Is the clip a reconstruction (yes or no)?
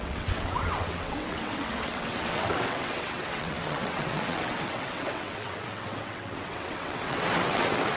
yes